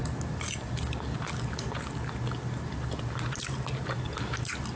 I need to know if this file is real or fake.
real